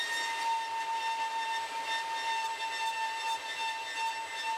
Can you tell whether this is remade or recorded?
recorded